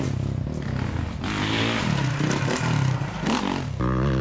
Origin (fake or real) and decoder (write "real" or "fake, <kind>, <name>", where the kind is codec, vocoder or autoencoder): real